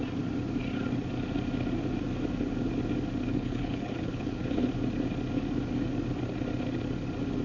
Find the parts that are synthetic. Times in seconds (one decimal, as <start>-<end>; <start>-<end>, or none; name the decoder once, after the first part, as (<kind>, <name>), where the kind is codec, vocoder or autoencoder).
3.3-4.7 (codec, HILCodec)